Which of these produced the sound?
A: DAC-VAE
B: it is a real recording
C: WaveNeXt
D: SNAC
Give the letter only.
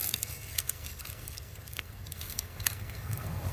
D